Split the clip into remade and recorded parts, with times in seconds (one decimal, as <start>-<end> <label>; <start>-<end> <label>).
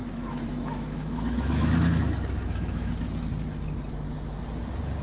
0.0-3.0 remade; 3.0-5.0 recorded